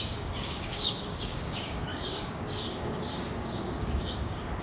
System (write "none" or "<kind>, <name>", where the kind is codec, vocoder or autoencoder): codec, DAC